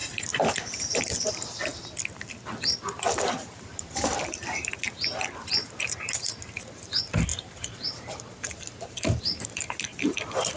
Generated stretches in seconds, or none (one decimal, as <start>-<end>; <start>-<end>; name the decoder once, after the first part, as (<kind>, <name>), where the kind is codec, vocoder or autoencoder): 7.3-9.5 (vocoder, BigVGAN v2)